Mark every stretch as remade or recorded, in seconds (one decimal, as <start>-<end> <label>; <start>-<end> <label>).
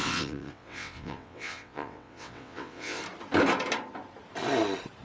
0.0-3.0 remade; 3.0-5.0 recorded